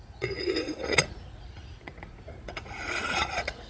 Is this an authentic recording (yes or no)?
no